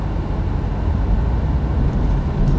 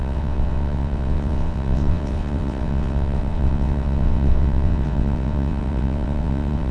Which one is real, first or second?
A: first